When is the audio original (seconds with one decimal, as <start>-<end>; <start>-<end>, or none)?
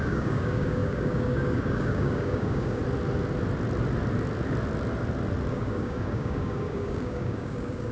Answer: 2.8-5.5